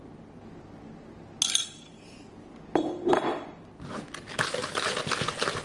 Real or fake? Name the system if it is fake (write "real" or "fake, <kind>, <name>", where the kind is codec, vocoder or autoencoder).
real